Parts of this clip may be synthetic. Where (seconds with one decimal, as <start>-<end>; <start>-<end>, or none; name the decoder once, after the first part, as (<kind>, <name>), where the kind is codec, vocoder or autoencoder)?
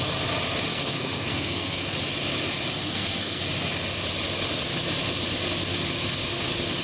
0.7-1.9 (codec, SNAC); 2.8-3.4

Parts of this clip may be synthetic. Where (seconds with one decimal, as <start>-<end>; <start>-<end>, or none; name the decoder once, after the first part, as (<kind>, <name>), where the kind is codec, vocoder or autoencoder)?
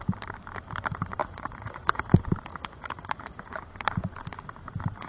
1.2-2.1 (vocoder, Vocos); 2.5-3.6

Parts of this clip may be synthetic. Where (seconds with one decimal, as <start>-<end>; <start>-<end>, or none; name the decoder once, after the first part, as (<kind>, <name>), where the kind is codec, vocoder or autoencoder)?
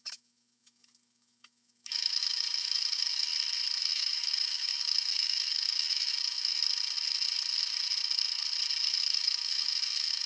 0.0-3.3 (autoencoder, DAC-VAE); 3.8-6.6; 9.0-10.3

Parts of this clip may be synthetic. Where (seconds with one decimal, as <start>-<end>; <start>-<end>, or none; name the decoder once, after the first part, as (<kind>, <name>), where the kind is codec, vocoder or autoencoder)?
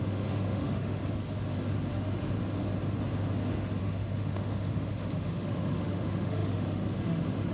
0.0-1.0 (autoencoder, DAC-VAE); 1.9-2.4; 3.8-7.5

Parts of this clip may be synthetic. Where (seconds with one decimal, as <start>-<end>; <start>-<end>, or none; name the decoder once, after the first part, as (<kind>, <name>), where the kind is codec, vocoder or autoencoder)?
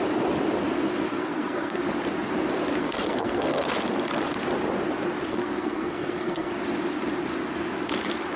1.1-1.8 (codec, SNAC); 2.8-3.7; 5.3-6.5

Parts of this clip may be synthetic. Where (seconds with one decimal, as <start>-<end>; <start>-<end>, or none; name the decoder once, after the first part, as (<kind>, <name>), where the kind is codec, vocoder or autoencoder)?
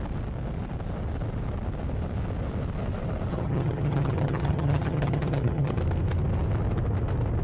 3.3-5.8 (vocoder, HiFi-GAN)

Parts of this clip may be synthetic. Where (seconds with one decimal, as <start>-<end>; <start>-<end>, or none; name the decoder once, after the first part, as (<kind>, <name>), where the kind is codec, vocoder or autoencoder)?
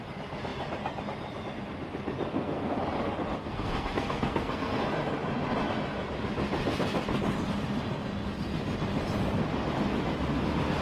2.3-2.8 (codec, SNAC); 3.4-4.8